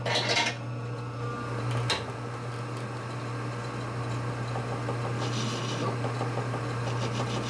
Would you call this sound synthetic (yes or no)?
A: no